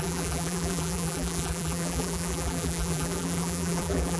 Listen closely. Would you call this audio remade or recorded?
remade